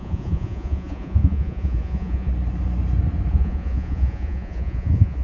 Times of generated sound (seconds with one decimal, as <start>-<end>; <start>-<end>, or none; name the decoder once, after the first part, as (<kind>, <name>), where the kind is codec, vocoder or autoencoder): 0.0-2.3 (vocoder, Vocos); 3.3-5.2